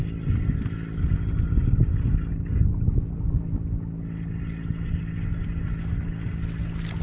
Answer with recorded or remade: recorded